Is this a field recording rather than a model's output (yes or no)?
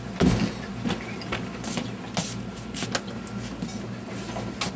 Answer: yes